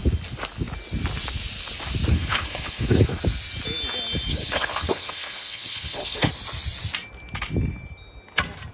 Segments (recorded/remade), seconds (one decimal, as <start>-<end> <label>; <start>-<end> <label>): 0.0-2.1 recorded; 2.1-3.2 remade; 3.2-4.3 recorded; 4.3-6.3 remade; 6.3-8.7 recorded